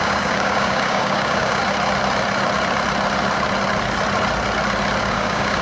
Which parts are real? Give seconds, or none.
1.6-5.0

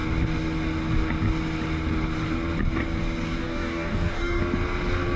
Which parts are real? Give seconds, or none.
0.0-3.4; 4.4-5.2

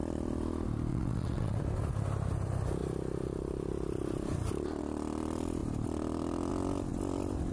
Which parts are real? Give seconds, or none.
0.0-0.9; 1.6-7.5